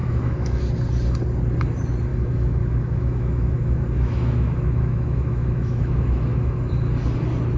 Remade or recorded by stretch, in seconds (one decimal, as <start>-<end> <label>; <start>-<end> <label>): 0.0-0.6 remade; 0.6-2.1 recorded; 2.1-6.7 remade; 6.7-7.6 recorded